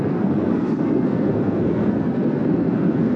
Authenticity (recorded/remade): remade